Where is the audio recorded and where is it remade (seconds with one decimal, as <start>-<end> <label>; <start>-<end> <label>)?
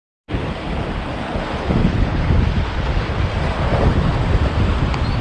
0.0-1.8 recorded; 1.8-2.3 remade; 2.3-5.2 recorded